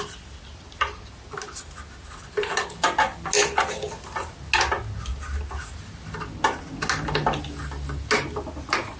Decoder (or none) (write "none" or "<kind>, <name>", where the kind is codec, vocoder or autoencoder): none